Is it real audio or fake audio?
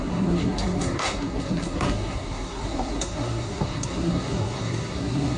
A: fake